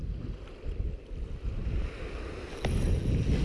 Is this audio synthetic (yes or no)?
no